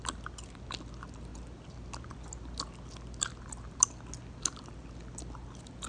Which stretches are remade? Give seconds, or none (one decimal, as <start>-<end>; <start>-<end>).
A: none